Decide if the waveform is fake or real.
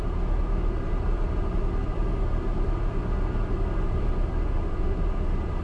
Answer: real